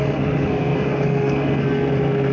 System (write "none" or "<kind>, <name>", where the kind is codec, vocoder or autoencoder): codec, SNAC